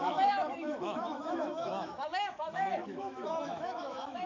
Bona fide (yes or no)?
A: no